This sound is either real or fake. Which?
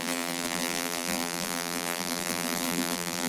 fake